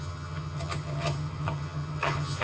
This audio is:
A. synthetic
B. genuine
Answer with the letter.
A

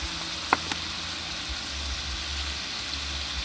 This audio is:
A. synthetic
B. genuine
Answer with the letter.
B